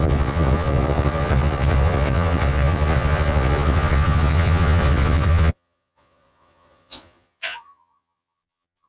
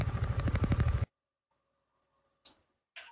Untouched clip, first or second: second